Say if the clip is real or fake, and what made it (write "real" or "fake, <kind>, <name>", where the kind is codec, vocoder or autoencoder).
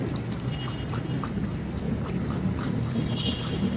real